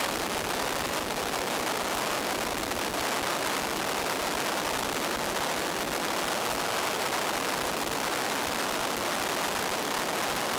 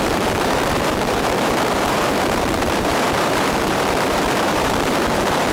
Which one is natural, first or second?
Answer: first